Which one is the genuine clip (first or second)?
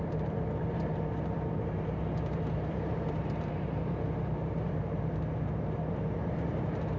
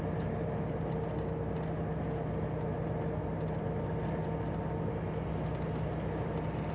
second